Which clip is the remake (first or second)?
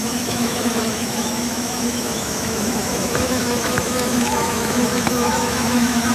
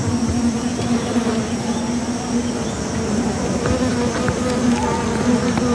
first